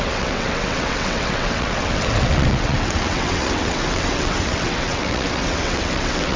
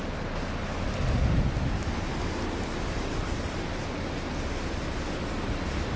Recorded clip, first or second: second